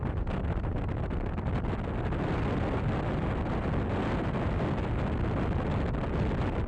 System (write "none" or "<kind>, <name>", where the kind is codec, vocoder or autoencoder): none